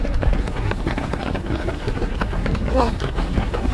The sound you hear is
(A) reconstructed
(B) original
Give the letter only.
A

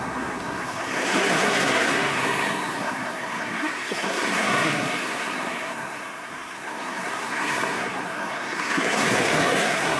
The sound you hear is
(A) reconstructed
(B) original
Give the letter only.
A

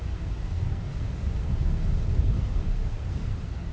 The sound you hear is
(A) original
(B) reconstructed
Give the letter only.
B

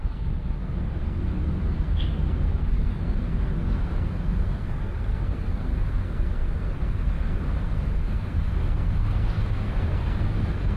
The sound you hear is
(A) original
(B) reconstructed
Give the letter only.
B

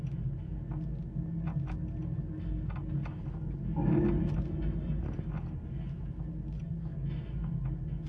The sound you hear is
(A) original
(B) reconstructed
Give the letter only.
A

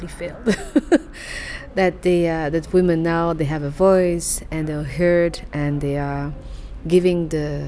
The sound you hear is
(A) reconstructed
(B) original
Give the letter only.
B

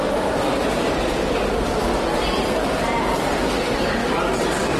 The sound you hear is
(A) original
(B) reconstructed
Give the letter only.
A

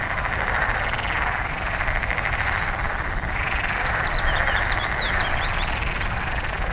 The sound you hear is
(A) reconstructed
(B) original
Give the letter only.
B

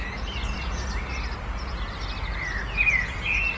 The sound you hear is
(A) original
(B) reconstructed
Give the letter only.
A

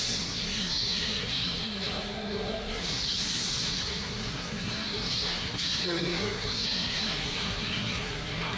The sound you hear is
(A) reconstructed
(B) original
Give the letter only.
A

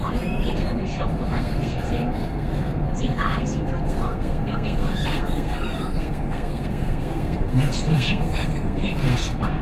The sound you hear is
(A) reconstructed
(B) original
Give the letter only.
A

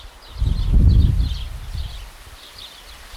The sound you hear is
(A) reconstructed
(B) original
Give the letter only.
B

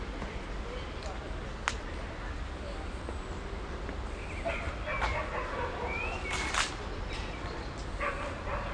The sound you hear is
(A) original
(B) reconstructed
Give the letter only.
A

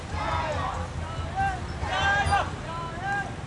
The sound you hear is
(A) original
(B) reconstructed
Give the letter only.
A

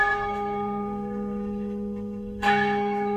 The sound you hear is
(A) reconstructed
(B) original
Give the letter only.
A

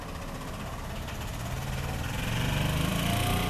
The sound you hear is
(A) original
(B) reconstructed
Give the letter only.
A